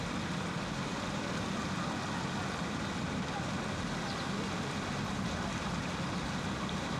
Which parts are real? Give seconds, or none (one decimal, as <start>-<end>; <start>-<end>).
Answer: 0.0-7.0